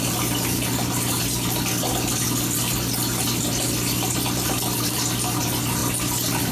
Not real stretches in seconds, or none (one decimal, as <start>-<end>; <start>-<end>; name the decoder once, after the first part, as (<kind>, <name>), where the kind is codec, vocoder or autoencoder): none